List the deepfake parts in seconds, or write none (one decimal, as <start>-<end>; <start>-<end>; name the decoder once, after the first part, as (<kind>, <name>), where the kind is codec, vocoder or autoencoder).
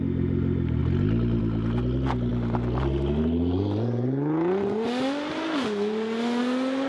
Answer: none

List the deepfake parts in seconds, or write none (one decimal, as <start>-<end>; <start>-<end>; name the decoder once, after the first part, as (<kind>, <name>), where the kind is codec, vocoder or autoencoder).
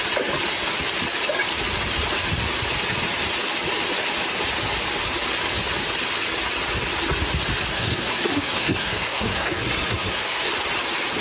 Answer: 7.7-10.5 (codec, SNAC)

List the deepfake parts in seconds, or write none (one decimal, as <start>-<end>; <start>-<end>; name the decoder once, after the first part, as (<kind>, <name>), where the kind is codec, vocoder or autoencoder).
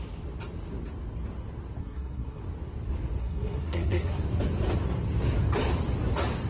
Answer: 1.8-2.4 (codec, SNAC); 3.2-4.2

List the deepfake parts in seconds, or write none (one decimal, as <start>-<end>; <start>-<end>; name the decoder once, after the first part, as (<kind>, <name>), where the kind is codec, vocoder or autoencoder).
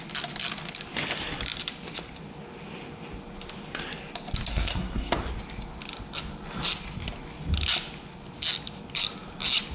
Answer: 4.5-5.1 (codec, SNAC)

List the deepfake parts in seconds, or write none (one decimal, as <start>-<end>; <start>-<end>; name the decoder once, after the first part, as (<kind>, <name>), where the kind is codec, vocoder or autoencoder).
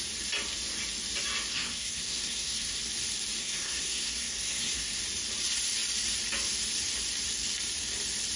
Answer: 1.5-2.8 (codec, SNAC); 3.4-5.0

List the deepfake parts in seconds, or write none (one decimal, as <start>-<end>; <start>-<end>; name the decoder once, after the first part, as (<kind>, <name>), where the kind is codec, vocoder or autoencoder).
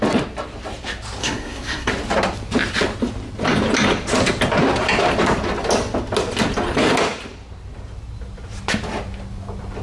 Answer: 1.2-1.9 (codec, SNAC)